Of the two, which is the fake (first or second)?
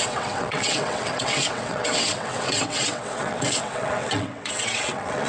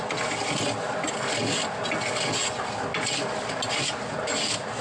first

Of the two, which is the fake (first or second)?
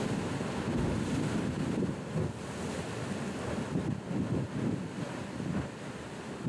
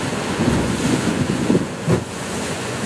second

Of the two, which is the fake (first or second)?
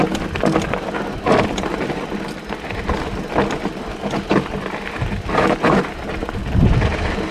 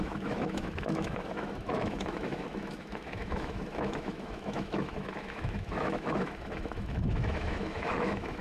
second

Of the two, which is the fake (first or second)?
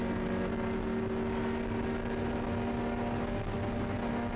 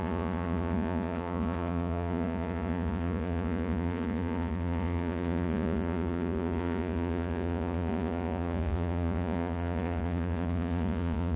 second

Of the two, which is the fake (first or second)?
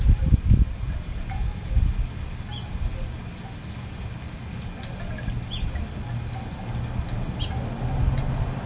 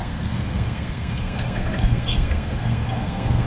second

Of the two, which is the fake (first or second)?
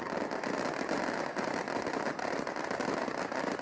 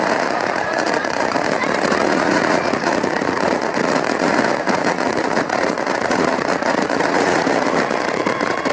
second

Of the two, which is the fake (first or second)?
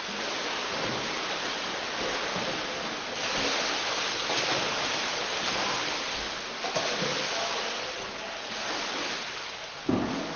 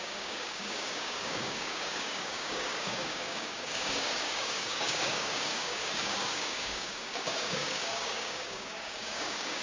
second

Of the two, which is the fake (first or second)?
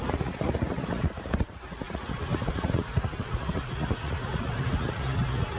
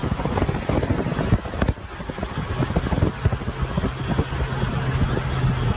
first